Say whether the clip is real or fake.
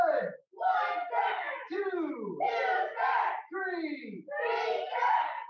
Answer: real